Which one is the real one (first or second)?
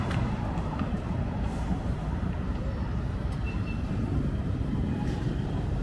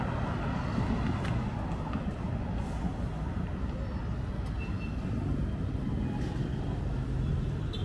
second